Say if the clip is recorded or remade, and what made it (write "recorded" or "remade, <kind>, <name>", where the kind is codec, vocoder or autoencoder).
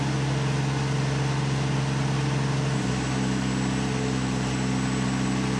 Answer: recorded